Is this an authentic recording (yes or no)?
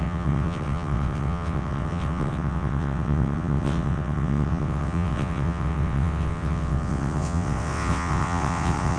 no